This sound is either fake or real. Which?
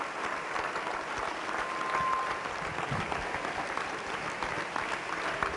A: real